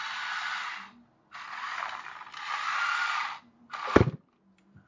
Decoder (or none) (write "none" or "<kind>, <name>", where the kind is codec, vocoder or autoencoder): none